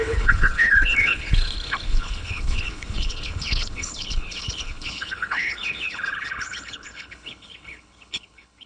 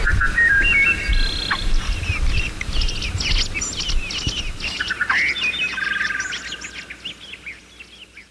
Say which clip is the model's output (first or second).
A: first